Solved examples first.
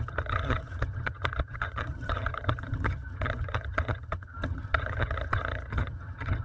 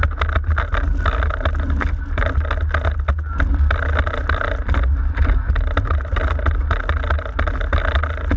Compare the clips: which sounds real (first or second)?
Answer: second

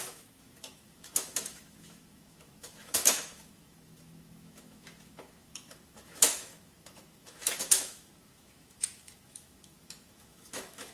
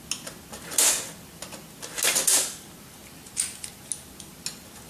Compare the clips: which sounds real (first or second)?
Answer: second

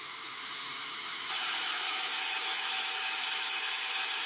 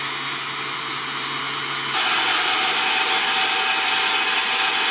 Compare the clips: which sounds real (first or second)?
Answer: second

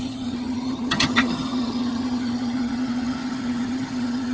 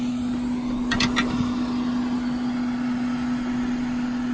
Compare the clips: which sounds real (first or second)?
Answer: second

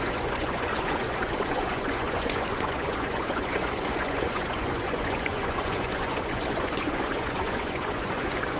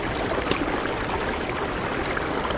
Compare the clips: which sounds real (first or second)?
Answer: second